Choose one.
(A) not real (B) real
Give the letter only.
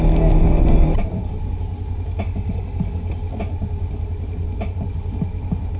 B